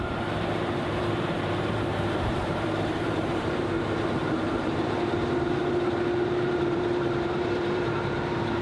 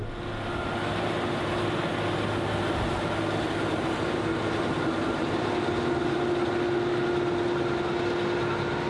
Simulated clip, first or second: first